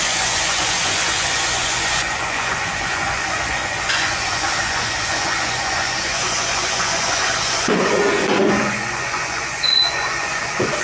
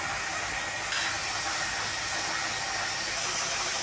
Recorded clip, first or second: second